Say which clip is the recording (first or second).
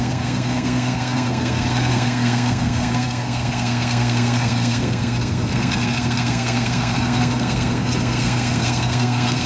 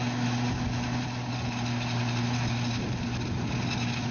second